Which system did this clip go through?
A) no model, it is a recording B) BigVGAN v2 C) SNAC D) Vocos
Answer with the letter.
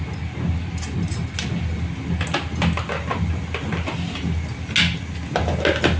A